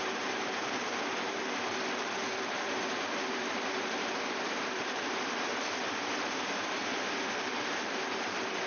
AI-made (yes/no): yes